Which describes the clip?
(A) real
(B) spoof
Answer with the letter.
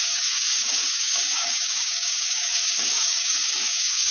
B